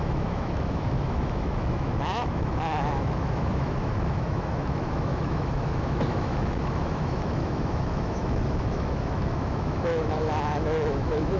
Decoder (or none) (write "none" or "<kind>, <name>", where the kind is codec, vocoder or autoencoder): autoencoder, DAC-VAE